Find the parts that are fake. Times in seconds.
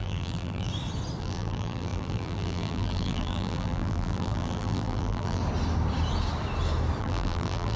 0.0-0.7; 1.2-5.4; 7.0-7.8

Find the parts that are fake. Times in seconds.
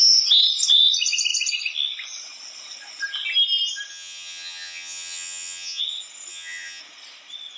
3.9-5.8; 6.3-6.8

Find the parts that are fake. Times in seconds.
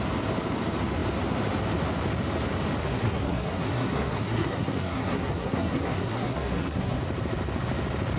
2.8-7.0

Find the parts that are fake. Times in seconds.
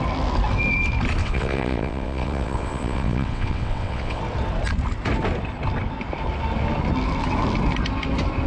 1.2-4.2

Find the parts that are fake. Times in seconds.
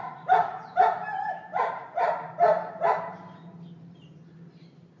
0.4-3.4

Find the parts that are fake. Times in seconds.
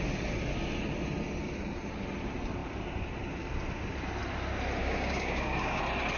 4.8-5.8